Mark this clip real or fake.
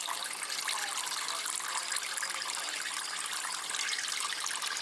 real